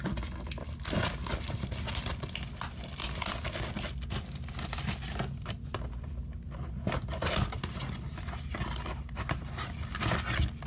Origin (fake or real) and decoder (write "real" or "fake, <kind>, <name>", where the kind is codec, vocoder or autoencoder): real